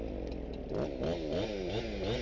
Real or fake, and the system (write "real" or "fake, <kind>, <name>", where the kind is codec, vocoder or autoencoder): real